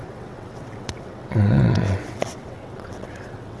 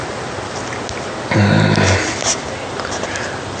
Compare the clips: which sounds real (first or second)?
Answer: second